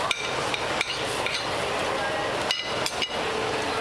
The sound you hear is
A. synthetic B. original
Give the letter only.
B